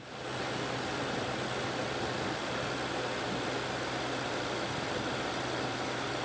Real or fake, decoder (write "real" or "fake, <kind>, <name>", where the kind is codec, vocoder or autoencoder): real